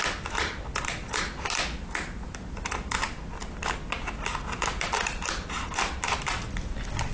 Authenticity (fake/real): real